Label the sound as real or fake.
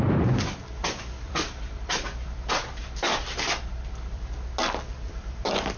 real